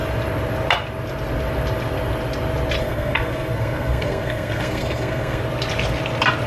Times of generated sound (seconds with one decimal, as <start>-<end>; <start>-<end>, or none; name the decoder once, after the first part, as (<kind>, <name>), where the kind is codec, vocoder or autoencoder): 2.8-5.4 (codec, SNAC)